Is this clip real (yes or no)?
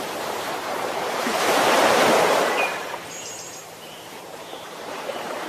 no